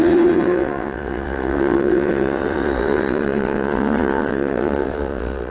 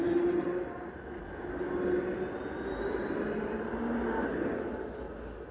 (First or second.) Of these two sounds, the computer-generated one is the first